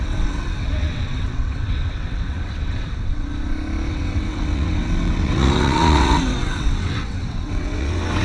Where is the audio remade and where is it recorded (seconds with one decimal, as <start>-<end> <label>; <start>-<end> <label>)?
0.0-3.3 remade; 3.3-3.9 recorded; 3.9-8.2 remade